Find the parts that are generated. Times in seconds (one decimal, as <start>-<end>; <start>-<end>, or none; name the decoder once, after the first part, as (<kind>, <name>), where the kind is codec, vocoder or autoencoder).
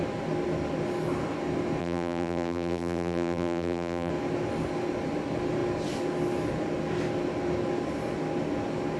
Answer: 1.8-4.1 (vocoder, BigVGAN v2)